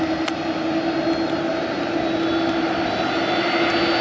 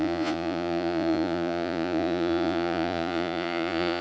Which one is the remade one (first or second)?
second